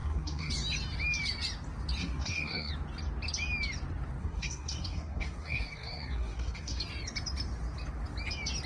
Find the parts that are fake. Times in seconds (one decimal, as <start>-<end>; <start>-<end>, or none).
0.0-0.5; 2.0-2.7; 4.2-6.8